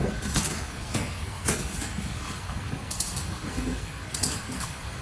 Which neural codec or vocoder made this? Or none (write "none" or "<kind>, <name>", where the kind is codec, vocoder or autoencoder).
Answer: codec, SNAC